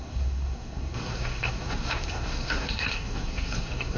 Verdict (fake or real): fake